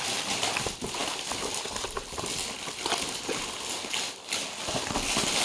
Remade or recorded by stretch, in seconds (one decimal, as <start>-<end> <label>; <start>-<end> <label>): 0.0-5.4 recorded